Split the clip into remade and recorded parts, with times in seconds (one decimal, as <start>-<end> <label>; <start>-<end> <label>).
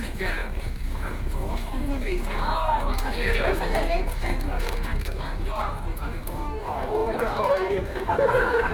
0.0-8.7 remade